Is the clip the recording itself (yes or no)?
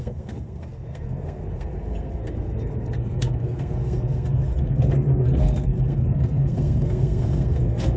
no